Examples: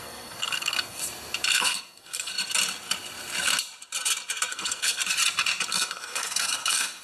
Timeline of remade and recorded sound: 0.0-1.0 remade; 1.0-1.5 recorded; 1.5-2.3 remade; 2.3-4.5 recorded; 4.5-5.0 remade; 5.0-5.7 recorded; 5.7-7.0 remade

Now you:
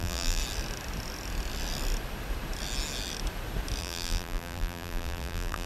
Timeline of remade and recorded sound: 0.0-0.4 remade; 0.4-3.8 recorded; 3.8-5.7 remade

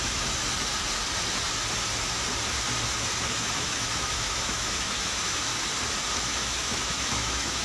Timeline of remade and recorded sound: 0.0-0.4 remade; 0.4-3.4 recorded; 3.4-5.5 remade; 5.5-6.1 recorded; 6.1-7.6 remade

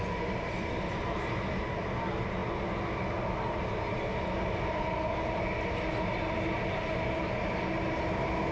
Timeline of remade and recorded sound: 0.0-8.5 recorded

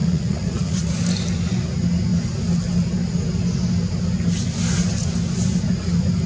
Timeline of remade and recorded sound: 0.0-0.9 remade; 0.9-6.3 recorded

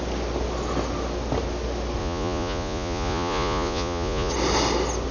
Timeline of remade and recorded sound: 0.0-2.0 recorded; 2.0-4.3 remade; 4.3-5.1 recorded